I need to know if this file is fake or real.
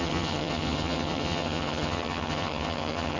fake